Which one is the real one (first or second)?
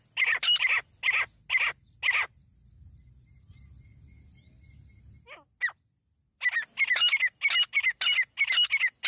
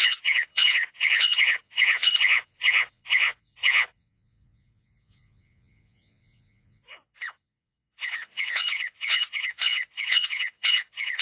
first